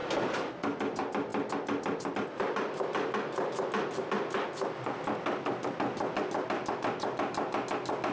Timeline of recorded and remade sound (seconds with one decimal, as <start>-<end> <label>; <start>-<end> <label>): 0.0-8.1 recorded

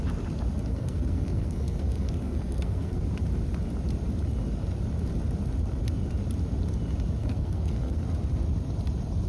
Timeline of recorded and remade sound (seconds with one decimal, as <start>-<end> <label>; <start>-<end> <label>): 0.0-0.7 recorded; 0.7-3.0 remade; 3.0-7.2 recorded; 7.2-8.0 remade; 8.0-9.3 recorded

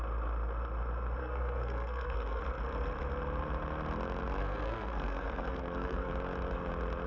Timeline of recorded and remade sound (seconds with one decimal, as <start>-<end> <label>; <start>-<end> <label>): 0.0-1.2 recorded; 1.2-2.4 remade; 2.4-4.4 recorded; 4.4-6.1 remade; 6.1-7.1 recorded